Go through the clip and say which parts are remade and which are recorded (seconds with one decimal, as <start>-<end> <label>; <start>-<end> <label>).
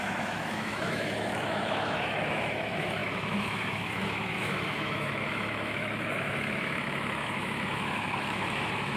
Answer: 0.0-9.0 remade